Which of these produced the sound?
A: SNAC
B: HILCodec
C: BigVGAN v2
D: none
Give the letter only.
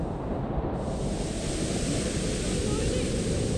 D